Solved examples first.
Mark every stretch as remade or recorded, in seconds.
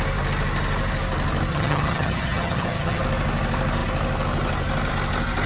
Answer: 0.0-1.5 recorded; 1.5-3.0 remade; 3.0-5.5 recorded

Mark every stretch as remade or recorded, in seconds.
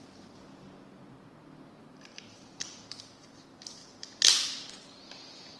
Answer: 0.0-1.8 recorded; 1.8-3.0 remade; 3.0-5.6 recorded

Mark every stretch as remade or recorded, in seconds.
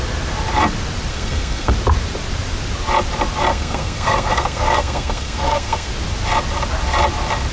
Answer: 0.0-1.1 recorded; 1.1-1.7 remade; 1.7-3.5 recorded; 3.5-5.9 remade; 5.9-7.5 recorded